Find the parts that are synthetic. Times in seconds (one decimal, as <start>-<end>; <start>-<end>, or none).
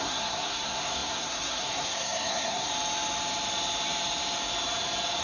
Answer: 0.0-2.7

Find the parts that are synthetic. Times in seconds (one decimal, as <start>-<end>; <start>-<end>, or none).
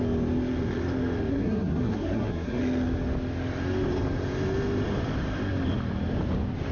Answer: 1.3-2.6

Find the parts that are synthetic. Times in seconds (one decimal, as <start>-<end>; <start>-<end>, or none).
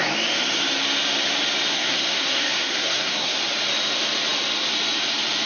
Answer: 1.7-3.4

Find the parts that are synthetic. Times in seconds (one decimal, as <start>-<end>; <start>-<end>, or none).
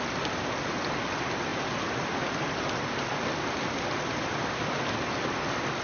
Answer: none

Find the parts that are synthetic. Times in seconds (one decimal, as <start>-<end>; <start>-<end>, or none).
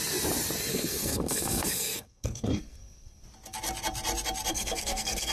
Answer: 0.7-3.2; 4.5-5.3